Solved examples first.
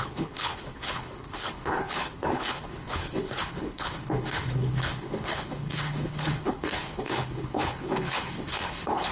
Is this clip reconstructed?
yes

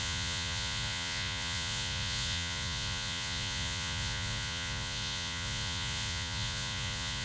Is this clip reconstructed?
yes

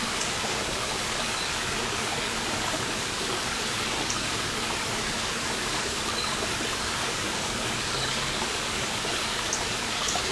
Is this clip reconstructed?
yes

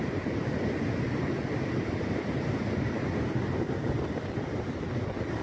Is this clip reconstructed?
no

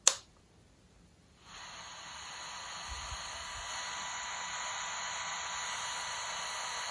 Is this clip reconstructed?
no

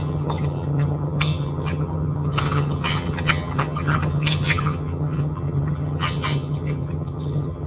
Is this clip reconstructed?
yes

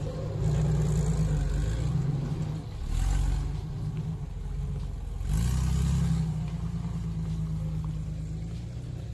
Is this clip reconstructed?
no